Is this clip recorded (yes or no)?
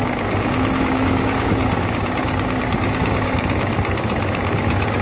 no